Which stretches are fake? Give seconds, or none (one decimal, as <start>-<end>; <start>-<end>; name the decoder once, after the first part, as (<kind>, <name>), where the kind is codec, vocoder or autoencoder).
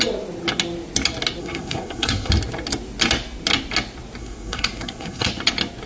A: 1.4-2.3 (codec, SNAC); 4.2-5.3